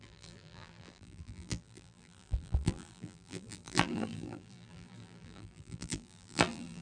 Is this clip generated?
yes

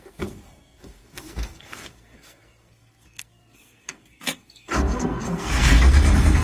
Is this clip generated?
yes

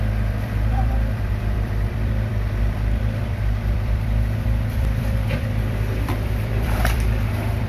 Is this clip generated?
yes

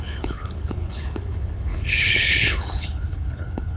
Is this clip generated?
yes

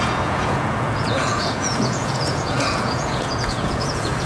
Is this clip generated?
yes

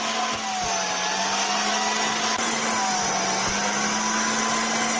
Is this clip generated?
no